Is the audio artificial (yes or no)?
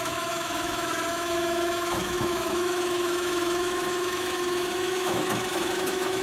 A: yes